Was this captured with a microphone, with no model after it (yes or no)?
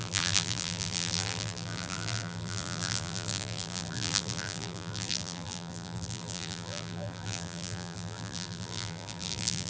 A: no